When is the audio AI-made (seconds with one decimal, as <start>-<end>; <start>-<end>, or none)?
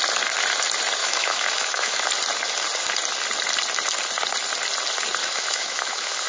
1.0-2.0; 5.2-6.3